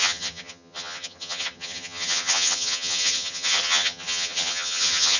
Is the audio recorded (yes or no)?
no